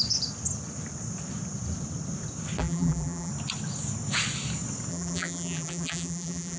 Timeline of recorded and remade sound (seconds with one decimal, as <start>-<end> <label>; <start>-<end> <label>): 0.0-2.6 recorded; 2.6-3.3 remade; 3.3-4.9 recorded; 4.9-6.6 remade